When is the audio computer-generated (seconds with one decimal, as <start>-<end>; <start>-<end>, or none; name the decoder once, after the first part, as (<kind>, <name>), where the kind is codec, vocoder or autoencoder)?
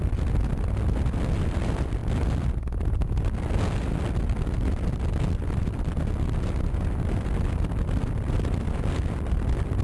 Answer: none